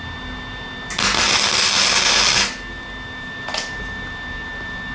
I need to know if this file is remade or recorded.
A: recorded